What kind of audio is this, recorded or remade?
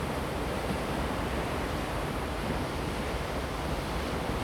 remade